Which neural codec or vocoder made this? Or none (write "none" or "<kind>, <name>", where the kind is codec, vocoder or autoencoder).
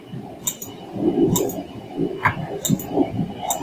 none